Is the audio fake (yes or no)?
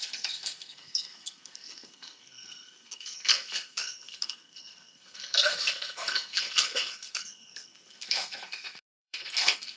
yes